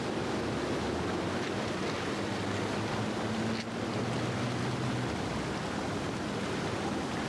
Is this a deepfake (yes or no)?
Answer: no